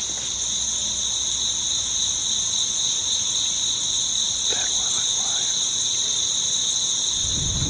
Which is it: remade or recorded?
recorded